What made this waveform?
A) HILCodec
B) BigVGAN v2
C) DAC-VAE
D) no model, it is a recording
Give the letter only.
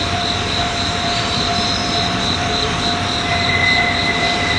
B